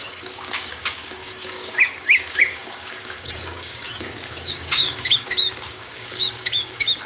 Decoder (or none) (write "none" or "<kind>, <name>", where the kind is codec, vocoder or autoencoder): codec, DAC